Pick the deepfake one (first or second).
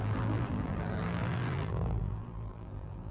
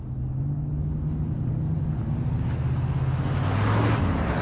first